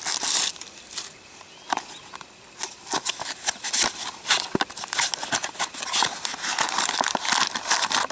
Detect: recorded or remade recorded